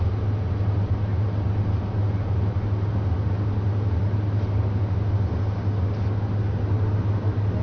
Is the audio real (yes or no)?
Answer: yes